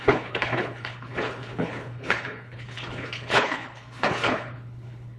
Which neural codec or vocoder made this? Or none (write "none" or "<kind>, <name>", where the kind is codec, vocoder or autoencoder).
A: codec, HILCodec